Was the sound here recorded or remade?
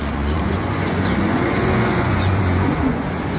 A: remade